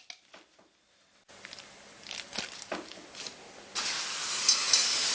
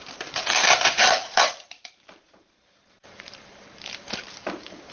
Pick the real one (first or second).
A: first